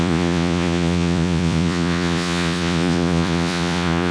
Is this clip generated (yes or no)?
yes